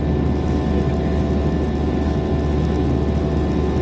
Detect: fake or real real